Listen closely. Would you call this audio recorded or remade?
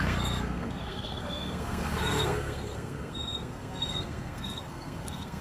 remade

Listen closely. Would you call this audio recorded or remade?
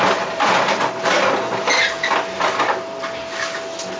recorded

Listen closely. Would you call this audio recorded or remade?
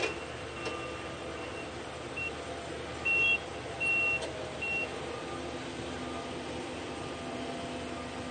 recorded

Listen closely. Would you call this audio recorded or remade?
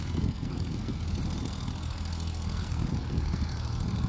remade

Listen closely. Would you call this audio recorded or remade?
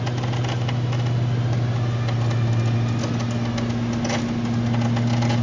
recorded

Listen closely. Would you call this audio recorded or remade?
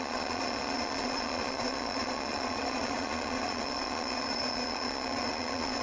remade